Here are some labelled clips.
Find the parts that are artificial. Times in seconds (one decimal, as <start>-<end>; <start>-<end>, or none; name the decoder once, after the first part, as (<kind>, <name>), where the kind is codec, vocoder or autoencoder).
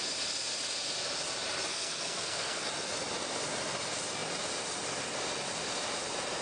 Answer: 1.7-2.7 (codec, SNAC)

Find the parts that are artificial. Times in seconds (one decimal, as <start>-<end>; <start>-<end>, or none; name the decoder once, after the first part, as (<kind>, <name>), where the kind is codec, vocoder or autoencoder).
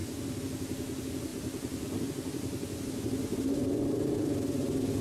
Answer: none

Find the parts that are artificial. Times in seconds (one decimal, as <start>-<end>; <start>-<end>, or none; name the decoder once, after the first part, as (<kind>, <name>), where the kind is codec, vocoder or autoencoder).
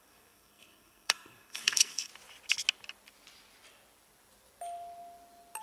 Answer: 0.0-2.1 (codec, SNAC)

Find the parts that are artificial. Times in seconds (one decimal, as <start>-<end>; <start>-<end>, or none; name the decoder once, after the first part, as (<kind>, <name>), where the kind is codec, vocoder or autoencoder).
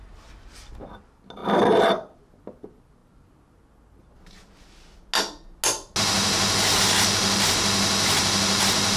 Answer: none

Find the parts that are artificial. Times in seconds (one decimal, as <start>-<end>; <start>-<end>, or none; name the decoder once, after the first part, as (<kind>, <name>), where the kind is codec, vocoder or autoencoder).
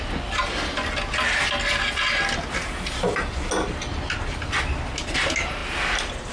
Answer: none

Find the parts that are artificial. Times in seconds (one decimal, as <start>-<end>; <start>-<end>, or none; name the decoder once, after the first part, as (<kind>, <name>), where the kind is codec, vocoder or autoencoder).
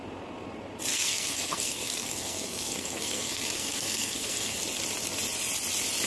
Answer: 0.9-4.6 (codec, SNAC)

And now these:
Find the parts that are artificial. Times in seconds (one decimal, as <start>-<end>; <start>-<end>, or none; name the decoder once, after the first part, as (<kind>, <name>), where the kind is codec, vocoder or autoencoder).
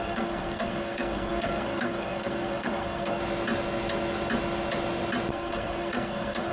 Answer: 0.0-3.2 (codec, SNAC); 5.3-6.5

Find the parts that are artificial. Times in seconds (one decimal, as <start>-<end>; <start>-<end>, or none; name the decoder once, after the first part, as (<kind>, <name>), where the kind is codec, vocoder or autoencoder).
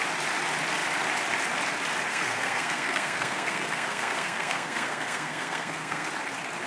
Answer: 2.1-6.1 (codec, SNAC)